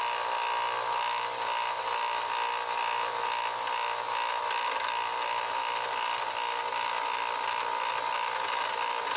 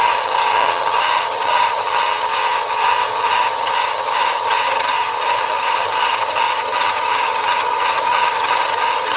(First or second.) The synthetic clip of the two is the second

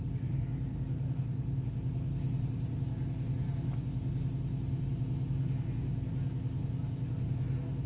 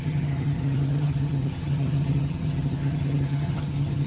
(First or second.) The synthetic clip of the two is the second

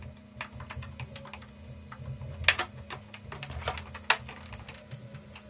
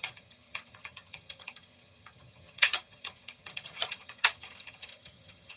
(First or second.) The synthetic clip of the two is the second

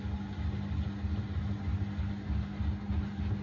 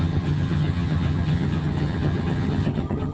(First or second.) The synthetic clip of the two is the second